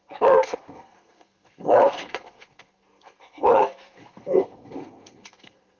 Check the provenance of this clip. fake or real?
fake